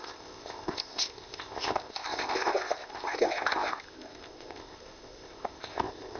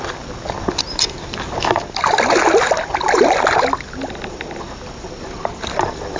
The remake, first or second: first